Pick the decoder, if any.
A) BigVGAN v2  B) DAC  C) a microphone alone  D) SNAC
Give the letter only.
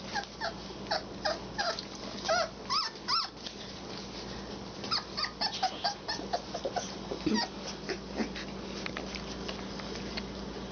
C